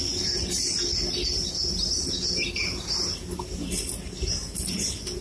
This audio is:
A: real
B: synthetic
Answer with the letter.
A